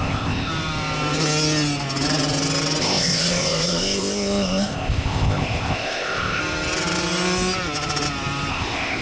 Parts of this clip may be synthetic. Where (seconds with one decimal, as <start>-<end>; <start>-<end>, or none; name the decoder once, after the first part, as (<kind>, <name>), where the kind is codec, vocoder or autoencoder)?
0.0-0.5 (codec, ZipCodec); 2.8-6.4; 8.5-9.0